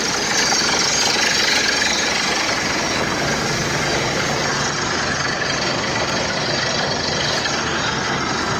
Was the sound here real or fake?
real